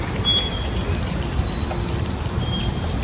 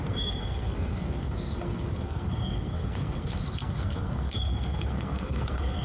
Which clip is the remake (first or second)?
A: second